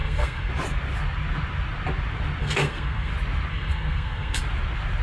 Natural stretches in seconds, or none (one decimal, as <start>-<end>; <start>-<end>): 0.5-2.4; 3.1-3.5; 4.4-5.0